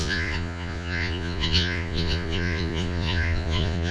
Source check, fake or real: fake